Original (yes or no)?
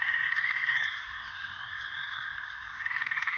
no